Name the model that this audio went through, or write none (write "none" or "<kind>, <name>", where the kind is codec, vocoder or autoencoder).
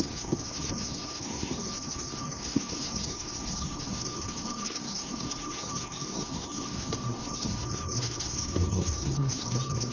codec, SNAC